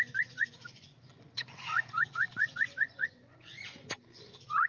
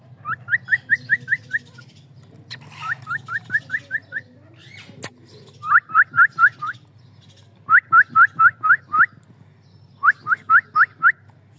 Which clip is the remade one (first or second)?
first